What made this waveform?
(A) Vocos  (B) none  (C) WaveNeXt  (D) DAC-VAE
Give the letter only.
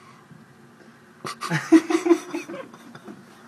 B